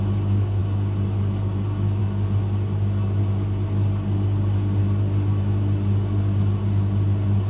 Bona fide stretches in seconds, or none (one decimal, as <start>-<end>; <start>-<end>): 0.0-7.5